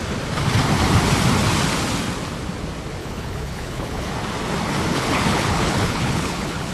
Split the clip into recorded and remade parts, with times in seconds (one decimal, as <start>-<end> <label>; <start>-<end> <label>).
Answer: 0.0-3.0 recorded; 3.0-4.1 remade; 4.1-4.9 recorded; 4.9-6.7 remade